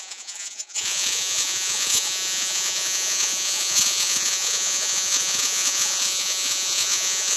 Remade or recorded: remade